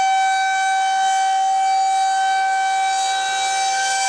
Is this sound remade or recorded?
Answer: recorded